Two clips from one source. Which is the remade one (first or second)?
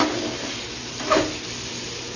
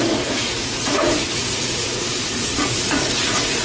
second